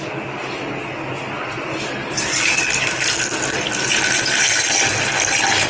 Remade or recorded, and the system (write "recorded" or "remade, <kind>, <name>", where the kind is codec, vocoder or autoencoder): recorded